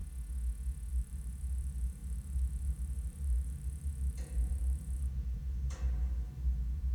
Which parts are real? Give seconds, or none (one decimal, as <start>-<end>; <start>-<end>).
0.0-0.9